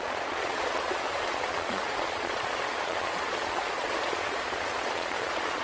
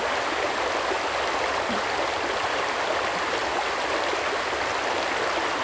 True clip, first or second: second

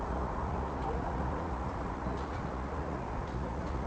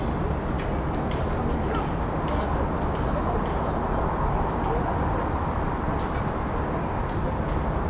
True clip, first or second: second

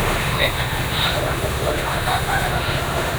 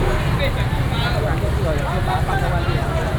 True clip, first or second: second